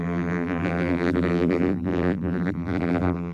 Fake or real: fake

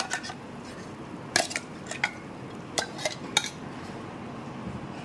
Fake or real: real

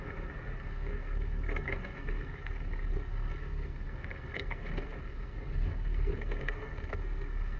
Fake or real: fake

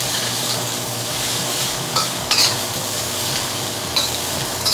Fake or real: fake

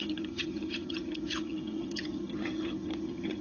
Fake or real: fake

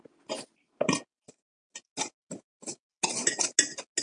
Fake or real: real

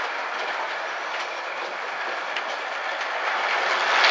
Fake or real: real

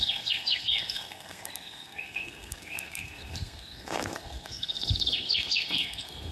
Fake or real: fake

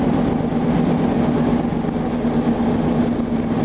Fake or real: real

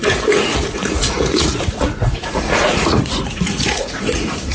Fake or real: fake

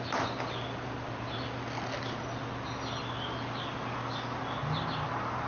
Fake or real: real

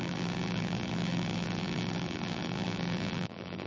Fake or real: fake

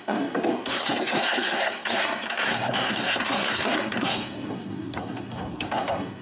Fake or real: fake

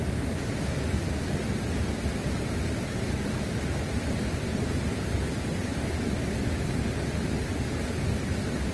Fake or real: real